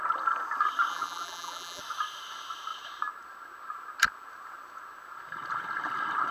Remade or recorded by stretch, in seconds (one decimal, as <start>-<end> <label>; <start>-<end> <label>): 0.0-0.9 recorded; 0.9-1.8 remade; 1.8-6.3 recorded